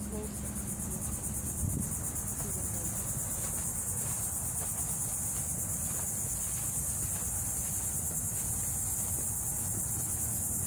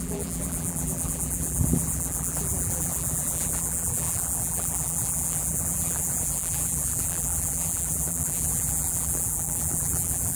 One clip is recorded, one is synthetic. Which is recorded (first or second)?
first